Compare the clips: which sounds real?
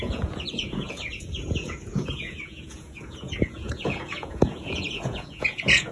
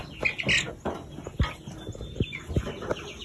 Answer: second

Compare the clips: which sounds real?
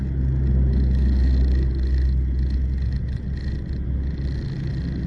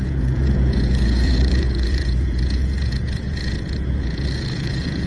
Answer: first